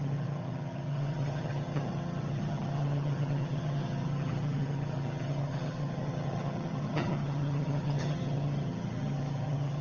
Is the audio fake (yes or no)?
yes